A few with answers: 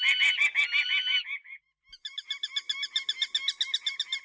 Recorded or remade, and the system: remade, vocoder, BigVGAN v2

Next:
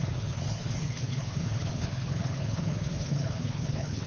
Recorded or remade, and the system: remade, codec, HILCodec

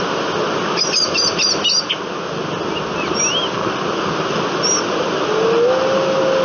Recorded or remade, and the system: recorded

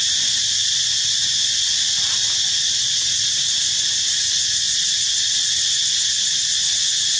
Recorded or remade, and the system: recorded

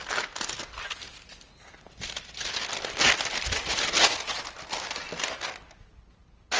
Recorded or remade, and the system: recorded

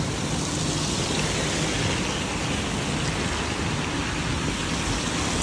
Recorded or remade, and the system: recorded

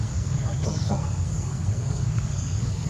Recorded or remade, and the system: remade, codec, SNAC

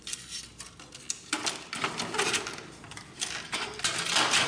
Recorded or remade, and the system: recorded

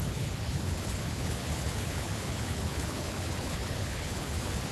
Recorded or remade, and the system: remade, codec, HILCodec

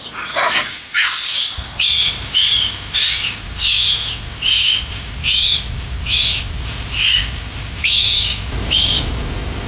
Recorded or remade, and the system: recorded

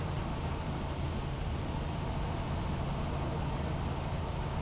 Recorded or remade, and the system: recorded